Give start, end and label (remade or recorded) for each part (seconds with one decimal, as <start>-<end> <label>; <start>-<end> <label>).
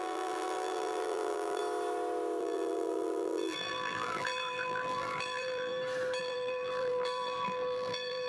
0.0-1.6 remade; 1.6-2.4 recorded; 2.4-5.7 remade; 5.7-6.2 recorded; 6.2-8.3 remade